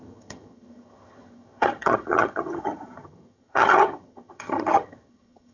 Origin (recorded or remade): remade